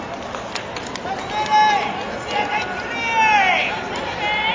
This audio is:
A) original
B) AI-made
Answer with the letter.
A